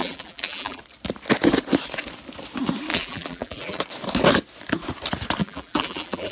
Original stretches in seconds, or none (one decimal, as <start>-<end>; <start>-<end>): 0.8-2.9; 3.8-5.4